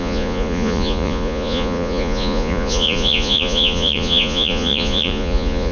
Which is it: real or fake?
fake